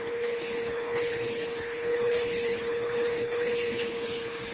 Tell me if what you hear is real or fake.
fake